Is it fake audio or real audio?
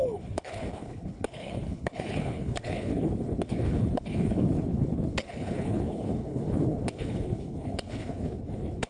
fake